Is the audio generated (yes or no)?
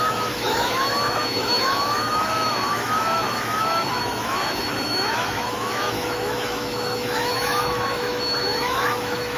yes